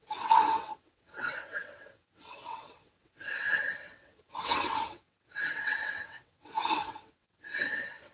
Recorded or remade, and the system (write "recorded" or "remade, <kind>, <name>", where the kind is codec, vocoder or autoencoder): remade, vocoder, WaveNeXt